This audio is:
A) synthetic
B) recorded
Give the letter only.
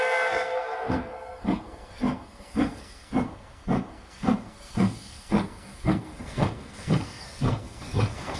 A